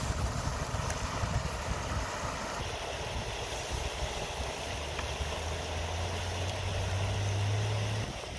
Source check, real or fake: real